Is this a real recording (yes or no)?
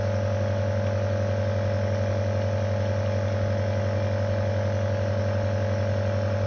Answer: yes